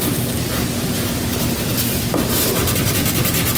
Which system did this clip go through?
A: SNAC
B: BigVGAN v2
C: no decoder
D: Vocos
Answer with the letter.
C